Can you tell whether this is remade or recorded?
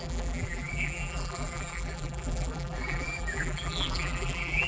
remade